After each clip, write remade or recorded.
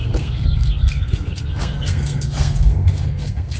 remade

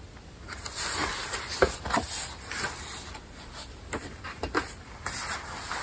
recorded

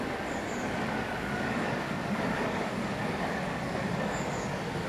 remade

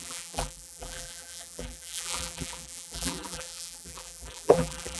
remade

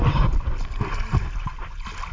recorded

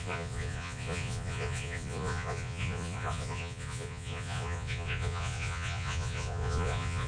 remade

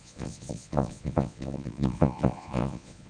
remade